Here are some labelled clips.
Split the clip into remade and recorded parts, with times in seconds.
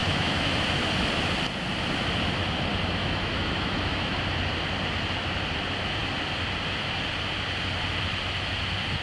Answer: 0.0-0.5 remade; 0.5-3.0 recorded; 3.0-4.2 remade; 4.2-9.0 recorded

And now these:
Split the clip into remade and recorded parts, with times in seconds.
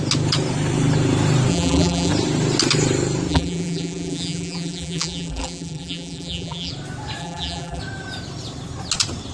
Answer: 0.0-1.5 recorded; 1.5-2.1 remade; 2.1-3.3 recorded; 3.3-6.7 remade; 6.7-7.2 recorded; 7.2-7.8 remade; 7.8-9.3 recorded